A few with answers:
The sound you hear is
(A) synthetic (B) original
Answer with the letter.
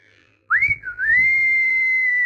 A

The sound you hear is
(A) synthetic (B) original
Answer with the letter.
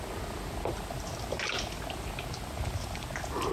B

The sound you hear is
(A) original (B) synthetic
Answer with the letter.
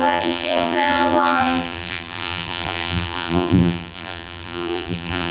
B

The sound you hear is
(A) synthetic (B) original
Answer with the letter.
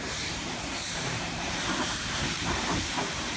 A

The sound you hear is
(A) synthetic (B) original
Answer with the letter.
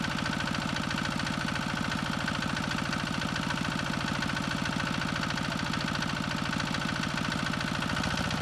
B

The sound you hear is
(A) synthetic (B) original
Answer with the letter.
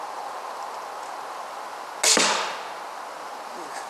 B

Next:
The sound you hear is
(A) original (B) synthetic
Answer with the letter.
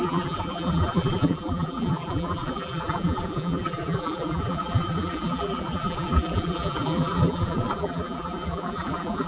B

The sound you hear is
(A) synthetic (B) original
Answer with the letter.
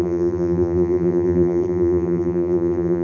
A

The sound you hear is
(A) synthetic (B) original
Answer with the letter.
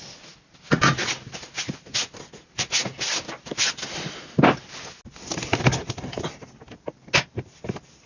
B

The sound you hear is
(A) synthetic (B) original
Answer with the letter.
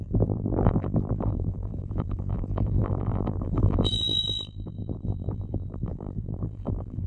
A